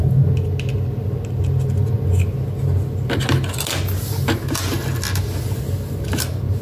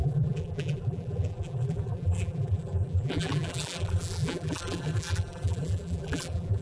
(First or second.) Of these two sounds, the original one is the first